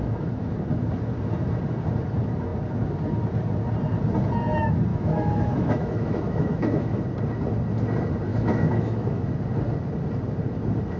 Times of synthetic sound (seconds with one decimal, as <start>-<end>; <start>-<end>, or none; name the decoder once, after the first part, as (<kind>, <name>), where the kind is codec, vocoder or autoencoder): 0.0-0.5 (autoencoder, DAC-VAE); 4.9-7.0; 8.3-9.3